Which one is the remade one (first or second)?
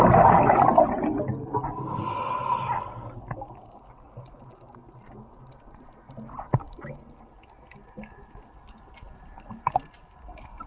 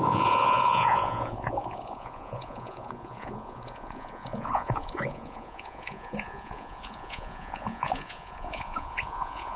second